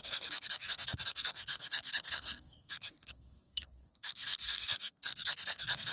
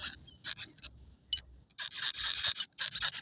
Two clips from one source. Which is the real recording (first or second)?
second